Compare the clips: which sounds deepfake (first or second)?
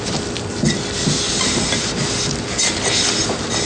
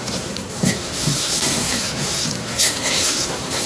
second